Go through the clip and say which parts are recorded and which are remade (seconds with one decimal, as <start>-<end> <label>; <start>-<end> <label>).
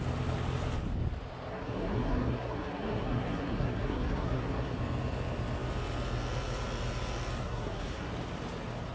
0.0-1.5 recorded; 1.5-4.8 remade; 4.8-7.4 recorded; 7.4-8.1 remade; 8.1-8.9 recorded